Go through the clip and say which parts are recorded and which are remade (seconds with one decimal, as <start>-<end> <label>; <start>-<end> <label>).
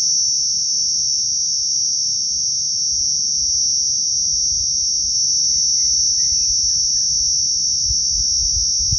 0.0-9.0 recorded